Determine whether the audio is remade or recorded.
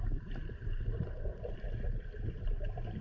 recorded